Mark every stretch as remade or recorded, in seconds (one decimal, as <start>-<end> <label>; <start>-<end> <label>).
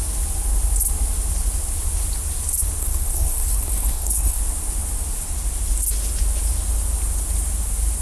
0.0-2.8 recorded; 2.8-4.4 remade; 4.4-8.0 recorded